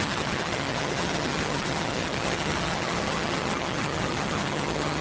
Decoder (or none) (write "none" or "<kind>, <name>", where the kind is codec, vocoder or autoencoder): vocoder, HiFi-GAN